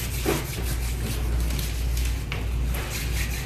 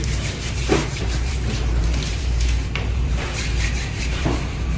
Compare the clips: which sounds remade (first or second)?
second